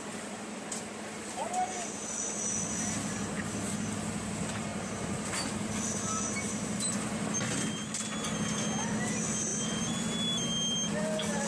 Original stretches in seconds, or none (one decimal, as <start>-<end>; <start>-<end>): 0.0-11.5